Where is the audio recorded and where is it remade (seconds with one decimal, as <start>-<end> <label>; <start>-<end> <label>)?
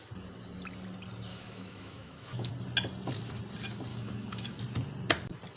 0.0-1.3 recorded; 1.3-2.5 remade; 2.5-3.9 recorded; 3.9-4.6 remade; 4.6-5.6 recorded